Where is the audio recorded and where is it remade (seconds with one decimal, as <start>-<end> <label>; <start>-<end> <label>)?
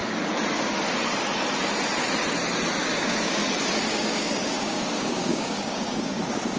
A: 0.0-2.8 recorded; 2.8-3.4 remade; 3.4-3.9 recorded; 3.9-6.6 remade